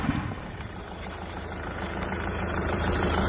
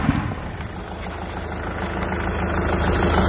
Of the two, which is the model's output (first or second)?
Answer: first